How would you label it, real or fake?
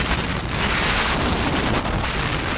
real